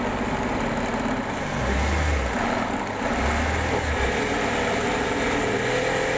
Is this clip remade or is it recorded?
recorded